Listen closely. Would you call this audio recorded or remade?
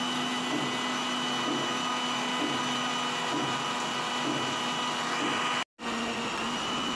recorded